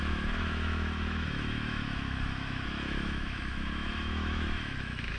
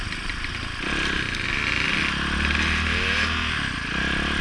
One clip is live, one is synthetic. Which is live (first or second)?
second